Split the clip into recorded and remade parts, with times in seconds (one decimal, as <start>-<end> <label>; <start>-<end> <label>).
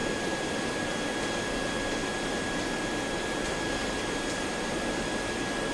0.0-0.8 remade; 0.8-2.0 recorded; 2.0-5.3 remade; 5.3-5.7 recorded